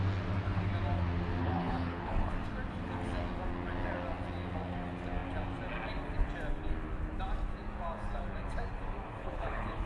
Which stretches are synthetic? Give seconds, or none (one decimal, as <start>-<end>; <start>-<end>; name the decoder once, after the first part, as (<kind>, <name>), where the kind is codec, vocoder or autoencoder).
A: 1.4-2.3 (codec, HILCodec); 9.2-9.9